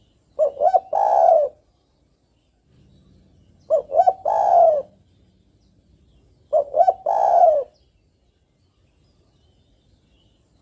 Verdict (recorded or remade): recorded